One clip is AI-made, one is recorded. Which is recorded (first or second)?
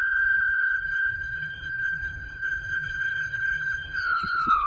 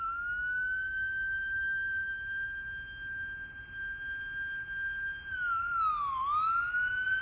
second